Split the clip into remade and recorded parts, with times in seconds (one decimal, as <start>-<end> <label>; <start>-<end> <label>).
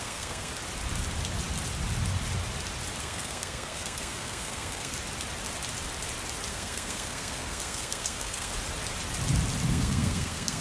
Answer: 0.0-0.5 remade; 0.5-3.0 recorded; 3.0-4.9 remade; 4.9-6.5 recorded; 6.5-8.5 remade; 8.5-9.7 recorded; 9.7-10.6 remade